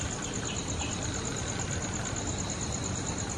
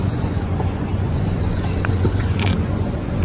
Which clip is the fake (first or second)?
second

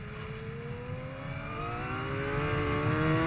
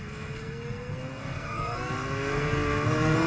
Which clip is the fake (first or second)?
second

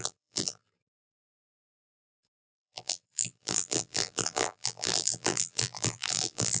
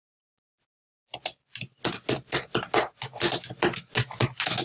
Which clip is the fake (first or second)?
first